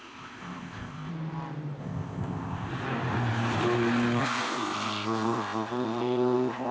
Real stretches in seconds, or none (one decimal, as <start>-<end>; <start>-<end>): 1.1-1.8; 2.7-4.2